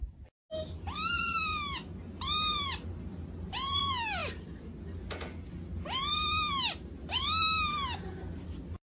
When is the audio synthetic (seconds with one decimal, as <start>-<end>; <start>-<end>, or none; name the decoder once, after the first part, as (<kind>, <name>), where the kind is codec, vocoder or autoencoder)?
none